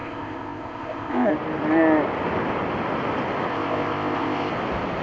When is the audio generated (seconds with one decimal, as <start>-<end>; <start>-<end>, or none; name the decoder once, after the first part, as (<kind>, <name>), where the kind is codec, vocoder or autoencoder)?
0.0-1.3 (codec, ZipCodec); 3.5-4.5